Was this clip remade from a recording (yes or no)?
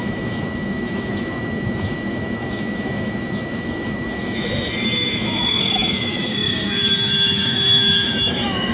yes